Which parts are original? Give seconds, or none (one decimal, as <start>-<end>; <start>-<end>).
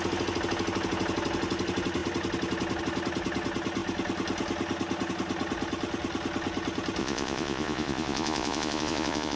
0.0-7.0